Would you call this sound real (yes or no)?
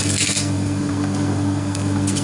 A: no